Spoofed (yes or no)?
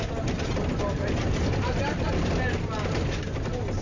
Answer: no